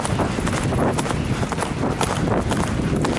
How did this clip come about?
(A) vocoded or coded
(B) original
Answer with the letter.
B